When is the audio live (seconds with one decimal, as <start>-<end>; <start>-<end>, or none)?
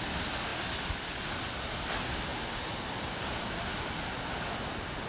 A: 0.0-5.1